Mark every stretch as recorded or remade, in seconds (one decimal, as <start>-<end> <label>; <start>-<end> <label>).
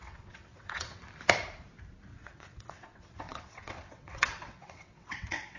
0.0-1.0 remade; 1.0-2.1 recorded; 2.1-5.6 remade